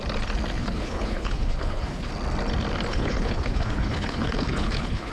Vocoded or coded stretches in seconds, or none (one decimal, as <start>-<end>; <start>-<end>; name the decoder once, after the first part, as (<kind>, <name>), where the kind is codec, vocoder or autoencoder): 0.6-2.1 (codec, HILCodec); 2.9-5.1